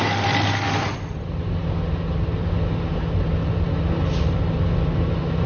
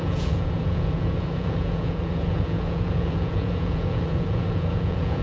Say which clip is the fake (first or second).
second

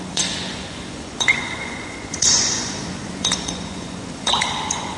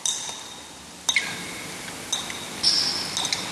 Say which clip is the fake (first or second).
first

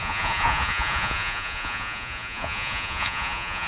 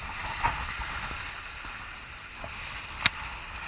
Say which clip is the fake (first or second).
first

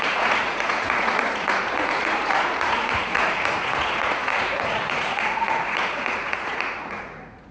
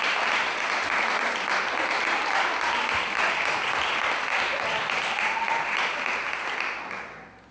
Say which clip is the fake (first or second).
first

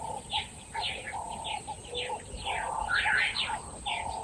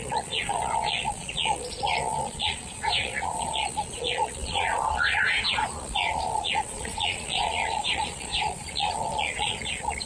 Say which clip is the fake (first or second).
second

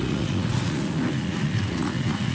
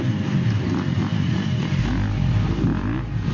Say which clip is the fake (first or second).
first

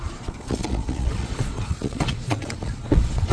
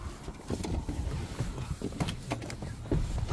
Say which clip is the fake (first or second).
first